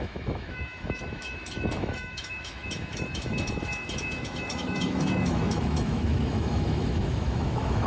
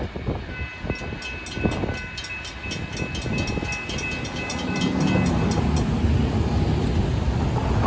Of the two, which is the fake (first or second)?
first